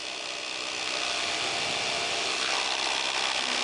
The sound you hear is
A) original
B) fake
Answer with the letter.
A